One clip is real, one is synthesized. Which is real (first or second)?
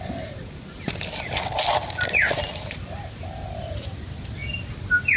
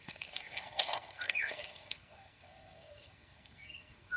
first